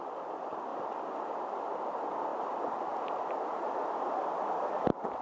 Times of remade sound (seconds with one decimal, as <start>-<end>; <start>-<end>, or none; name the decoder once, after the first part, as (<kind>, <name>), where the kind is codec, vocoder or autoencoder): 0.0-0.7 (vocoder, BigVGAN v2); 1.2-5.2